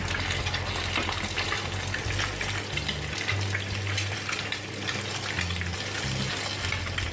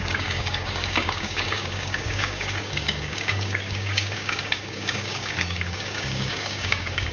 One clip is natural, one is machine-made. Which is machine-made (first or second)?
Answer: second